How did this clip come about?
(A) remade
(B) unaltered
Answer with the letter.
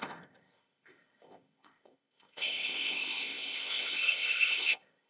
A